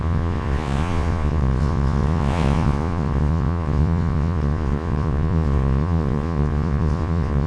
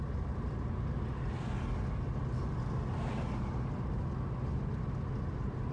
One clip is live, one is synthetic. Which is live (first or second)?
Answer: second